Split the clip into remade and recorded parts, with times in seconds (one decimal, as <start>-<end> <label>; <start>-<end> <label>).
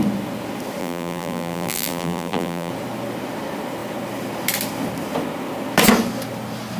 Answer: 0.0-0.8 recorded; 0.8-2.7 remade; 2.7-6.8 recorded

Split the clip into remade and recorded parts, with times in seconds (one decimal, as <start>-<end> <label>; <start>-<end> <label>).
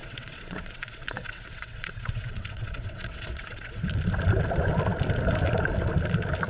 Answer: 0.0-3.9 remade; 3.9-6.5 recorded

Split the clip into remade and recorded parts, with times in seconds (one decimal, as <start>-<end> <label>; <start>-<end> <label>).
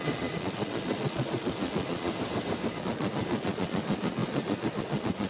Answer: 0.0-2.1 remade; 2.1-2.8 recorded; 2.8-5.3 remade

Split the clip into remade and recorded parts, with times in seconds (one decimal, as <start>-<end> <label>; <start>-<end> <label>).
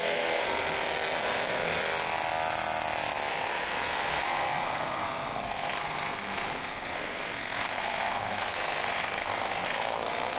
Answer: 0.0-1.8 remade; 1.8-3.3 recorded; 3.3-10.4 remade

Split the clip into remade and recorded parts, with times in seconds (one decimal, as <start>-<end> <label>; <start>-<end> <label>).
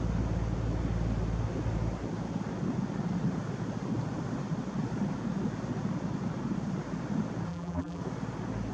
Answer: 0.0-7.5 recorded; 7.5-8.0 remade; 8.0-8.7 recorded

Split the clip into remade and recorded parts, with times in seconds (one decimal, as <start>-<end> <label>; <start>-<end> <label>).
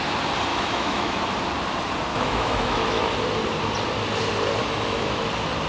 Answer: 0.0-0.5 recorded; 0.5-1.2 remade; 1.2-2.1 recorded; 2.1-3.0 remade; 3.0-4.6 recorded; 4.6-5.2 remade; 5.2-5.7 recorded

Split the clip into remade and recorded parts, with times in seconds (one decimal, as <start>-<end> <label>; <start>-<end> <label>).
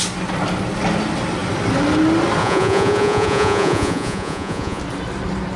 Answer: 0.0-2.4 recorded; 2.4-4.8 remade; 4.8-5.6 recorded